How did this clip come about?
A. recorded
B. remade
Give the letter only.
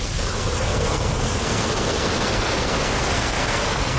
B